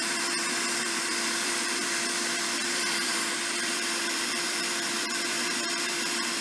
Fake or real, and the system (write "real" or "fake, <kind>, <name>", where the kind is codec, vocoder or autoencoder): fake, vocoder, BigVGAN v2